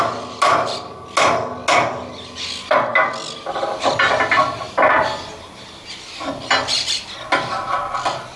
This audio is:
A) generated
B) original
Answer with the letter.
B